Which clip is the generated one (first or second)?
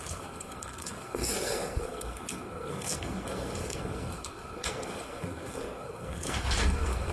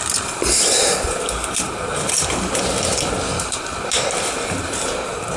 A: first